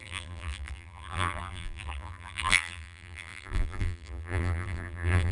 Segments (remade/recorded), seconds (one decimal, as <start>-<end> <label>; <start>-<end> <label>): 0.0-5.3 remade